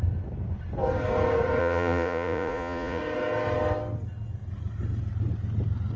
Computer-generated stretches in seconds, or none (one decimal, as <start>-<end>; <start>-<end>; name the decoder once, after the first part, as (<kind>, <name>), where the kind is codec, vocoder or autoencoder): 1.6-3.0 (vocoder, Vocos)